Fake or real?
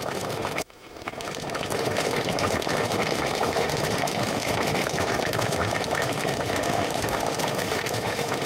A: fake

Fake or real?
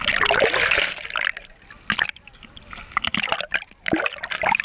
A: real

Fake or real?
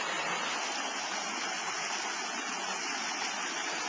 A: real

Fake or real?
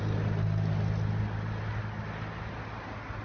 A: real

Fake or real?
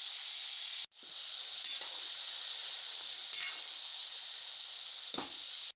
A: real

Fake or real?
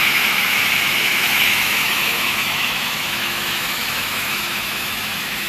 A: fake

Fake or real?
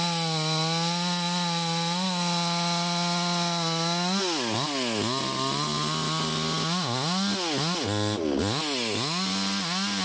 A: real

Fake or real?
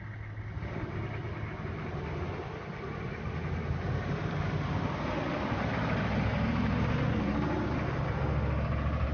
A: real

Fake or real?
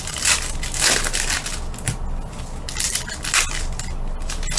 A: real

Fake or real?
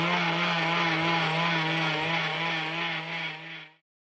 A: real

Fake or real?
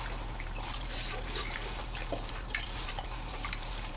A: fake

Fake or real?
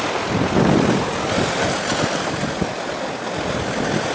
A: real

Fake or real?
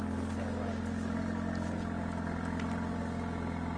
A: real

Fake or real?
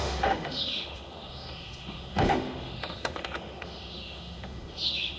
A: fake